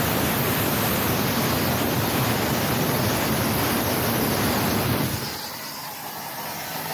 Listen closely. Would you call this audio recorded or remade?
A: recorded